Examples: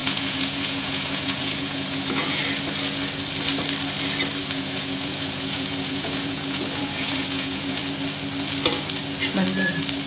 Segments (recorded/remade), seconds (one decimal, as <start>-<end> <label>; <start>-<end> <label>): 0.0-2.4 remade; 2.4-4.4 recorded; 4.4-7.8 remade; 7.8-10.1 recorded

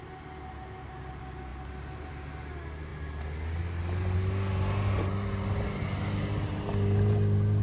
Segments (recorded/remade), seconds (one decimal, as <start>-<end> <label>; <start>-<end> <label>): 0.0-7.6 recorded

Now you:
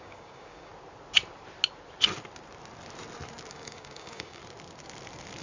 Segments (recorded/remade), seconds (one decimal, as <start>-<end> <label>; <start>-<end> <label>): 0.0-0.7 remade; 0.7-3.5 recorded; 3.5-4.4 remade; 4.4-5.4 recorded

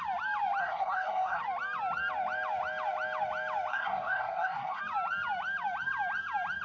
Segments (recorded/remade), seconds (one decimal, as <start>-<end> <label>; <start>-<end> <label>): 0.0-0.6 recorded; 0.6-1.4 remade; 1.4-3.7 recorded; 3.7-4.8 remade; 4.8-6.6 recorded